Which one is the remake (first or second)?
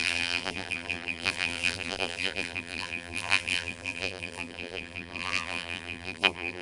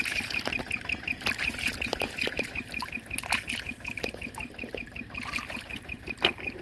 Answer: first